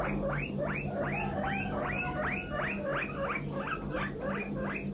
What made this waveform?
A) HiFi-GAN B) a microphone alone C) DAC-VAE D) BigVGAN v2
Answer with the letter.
B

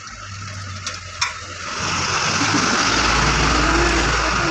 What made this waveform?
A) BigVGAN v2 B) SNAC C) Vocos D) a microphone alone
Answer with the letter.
D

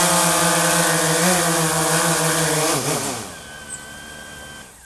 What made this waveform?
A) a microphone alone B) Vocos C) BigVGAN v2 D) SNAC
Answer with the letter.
A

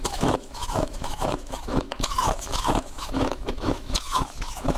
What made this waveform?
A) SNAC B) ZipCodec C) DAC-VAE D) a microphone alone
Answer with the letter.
C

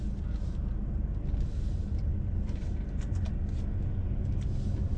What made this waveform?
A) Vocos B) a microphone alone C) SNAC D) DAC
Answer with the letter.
B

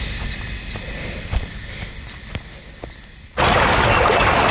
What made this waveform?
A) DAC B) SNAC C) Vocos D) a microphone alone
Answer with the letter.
D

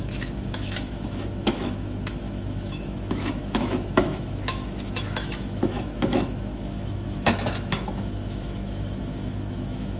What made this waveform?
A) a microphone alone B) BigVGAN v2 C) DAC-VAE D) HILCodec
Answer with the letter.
C